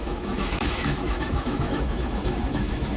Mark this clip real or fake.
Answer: fake